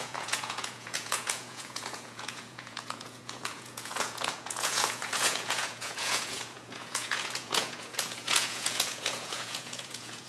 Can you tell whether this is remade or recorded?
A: remade